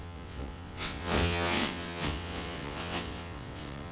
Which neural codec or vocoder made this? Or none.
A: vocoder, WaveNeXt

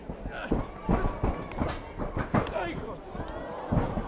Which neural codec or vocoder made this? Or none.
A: none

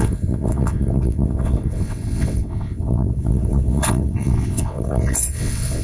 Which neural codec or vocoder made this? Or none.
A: vocoder, WaveNeXt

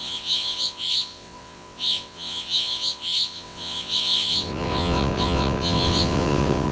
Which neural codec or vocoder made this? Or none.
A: vocoder, WaveNeXt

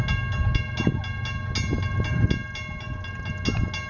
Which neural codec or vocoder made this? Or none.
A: none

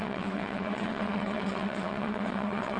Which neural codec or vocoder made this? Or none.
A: vocoder, WaveNeXt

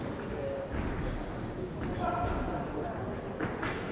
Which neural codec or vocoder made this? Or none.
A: none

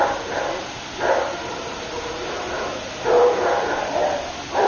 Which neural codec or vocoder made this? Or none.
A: none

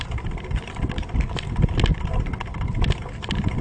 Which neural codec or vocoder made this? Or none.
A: none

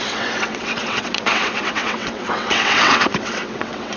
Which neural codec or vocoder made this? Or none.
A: vocoder, WaveNeXt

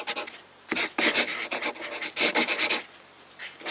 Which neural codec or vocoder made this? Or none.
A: none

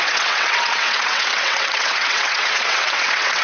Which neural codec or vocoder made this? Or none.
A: vocoder, WaveNeXt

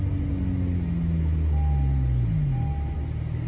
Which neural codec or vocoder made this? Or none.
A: none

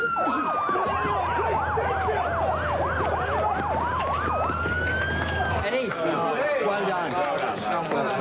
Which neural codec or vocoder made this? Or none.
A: none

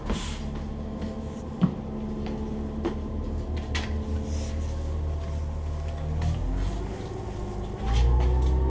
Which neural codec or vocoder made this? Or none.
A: none